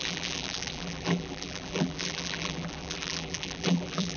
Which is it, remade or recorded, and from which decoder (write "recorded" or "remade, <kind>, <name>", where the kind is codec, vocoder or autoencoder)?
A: remade, vocoder, BigVGAN v2